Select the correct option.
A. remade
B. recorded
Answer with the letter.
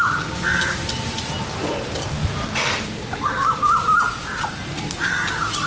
B